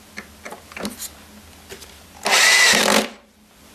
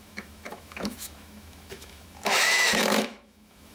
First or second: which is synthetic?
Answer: second